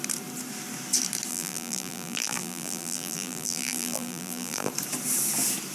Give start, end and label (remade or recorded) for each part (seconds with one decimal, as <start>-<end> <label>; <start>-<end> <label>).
0.0-1.3 recorded; 1.3-4.7 remade; 4.7-5.7 recorded